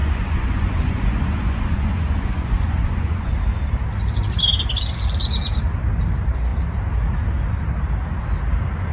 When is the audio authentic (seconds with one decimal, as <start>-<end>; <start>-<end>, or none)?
3.3-8.9